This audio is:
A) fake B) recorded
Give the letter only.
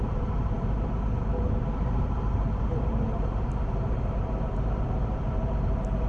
A